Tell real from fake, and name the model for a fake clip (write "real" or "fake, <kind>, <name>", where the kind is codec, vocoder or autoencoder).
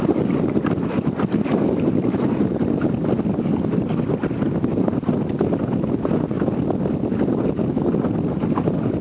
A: real